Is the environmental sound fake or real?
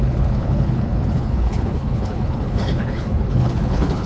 fake